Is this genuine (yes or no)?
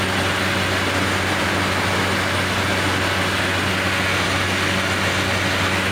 yes